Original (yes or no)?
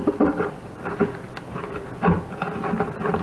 yes